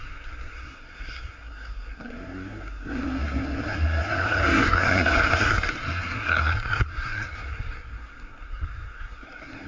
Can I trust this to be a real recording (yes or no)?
no